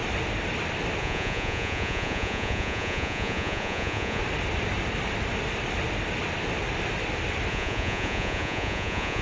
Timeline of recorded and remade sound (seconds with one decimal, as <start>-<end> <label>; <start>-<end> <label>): 0.0-1.0 recorded; 1.0-4.2 remade; 4.2-7.5 recorded; 7.5-9.2 remade